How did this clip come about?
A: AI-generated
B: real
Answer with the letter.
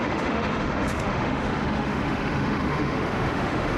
A